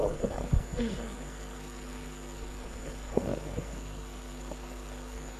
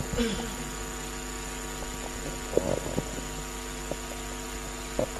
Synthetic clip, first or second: first